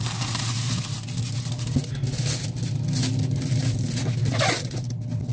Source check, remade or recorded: recorded